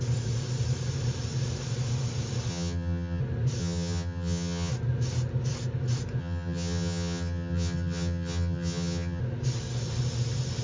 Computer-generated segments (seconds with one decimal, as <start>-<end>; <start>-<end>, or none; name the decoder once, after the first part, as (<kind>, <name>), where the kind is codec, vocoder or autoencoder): 2.5-3.2 (vocoder, HiFi-GAN); 3.6-4.7; 6.2-9.2